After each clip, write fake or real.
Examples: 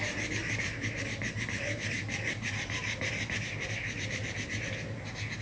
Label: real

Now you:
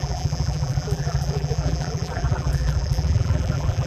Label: fake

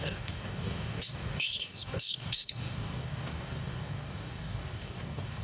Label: fake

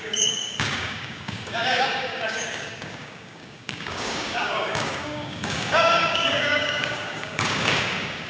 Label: fake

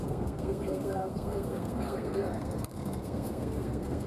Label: fake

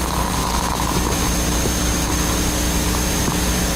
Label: real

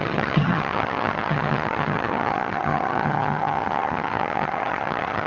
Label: fake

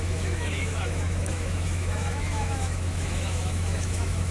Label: fake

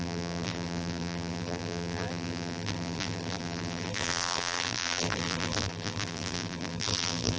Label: fake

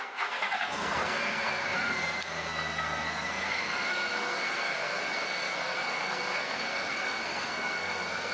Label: fake